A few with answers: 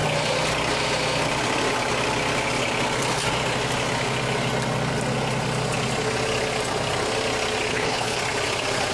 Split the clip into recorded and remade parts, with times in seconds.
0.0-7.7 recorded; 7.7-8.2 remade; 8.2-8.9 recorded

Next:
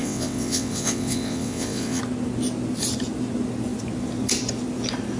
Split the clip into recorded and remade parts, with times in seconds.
0.0-2.0 remade; 2.0-5.2 recorded

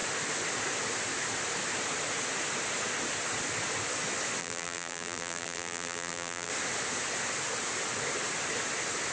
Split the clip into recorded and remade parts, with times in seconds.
0.0-4.4 recorded; 4.4-6.5 remade; 6.5-9.1 recorded

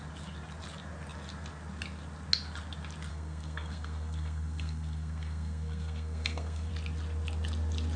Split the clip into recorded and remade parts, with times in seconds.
0.0-3.1 recorded; 3.1-6.7 remade; 6.7-8.0 recorded